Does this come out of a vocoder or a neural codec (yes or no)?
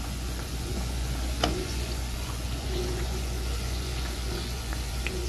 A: yes